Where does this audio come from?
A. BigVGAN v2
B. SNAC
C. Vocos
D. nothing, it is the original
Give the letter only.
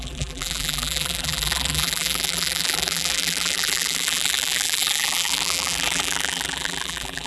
A